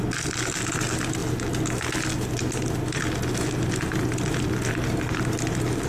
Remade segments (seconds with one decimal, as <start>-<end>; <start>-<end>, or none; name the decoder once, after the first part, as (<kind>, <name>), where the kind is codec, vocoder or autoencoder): none